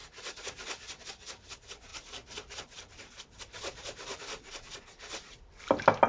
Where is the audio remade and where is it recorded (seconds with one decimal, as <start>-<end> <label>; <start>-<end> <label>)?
0.0-1.9 recorded; 1.9-4.8 remade; 4.8-6.1 recorded